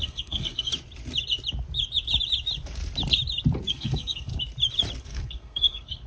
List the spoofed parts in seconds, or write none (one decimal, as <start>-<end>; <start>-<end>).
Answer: 0.0-0.7; 3.7-4.3; 5.0-6.1

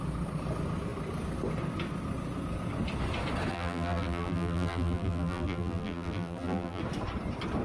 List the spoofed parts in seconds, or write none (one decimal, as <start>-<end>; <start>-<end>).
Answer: 3.5-6.8

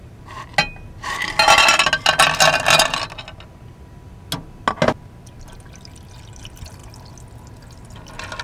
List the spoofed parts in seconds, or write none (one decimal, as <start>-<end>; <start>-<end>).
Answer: none

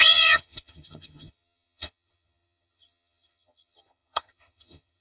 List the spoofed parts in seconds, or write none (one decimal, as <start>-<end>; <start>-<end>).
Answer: 0.0-5.0

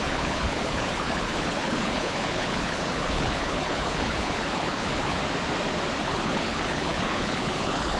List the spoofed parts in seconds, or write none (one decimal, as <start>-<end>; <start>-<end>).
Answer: 0.0-5.2; 6.0-8.0

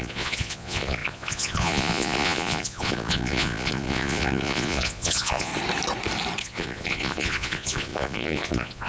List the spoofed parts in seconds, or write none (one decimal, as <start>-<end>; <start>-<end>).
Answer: 0.0-5.5; 6.4-8.9

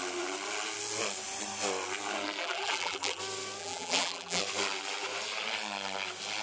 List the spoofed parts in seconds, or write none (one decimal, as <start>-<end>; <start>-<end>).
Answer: 2.4-3.2; 3.6-4.4

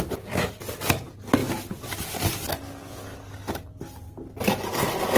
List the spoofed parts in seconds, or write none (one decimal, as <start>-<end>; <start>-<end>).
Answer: none